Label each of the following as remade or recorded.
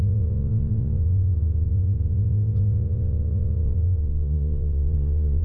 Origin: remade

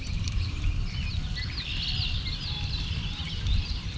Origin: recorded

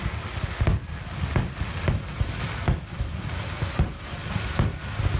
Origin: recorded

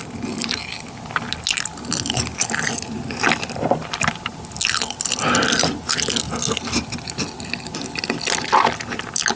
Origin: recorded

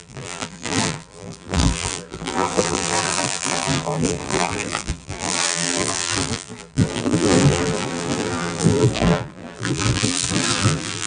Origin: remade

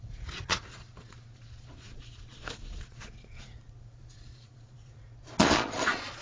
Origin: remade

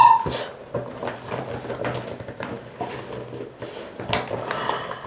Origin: recorded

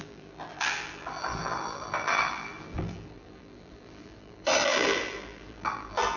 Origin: remade